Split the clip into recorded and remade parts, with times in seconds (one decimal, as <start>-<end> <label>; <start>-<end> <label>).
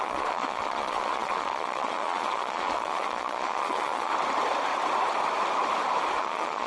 0.0-4.1 remade; 4.1-6.2 recorded; 6.2-6.7 remade